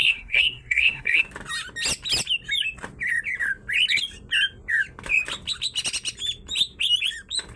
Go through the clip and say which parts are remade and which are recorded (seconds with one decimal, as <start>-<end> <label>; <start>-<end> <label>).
0.0-1.2 remade; 1.2-7.6 recorded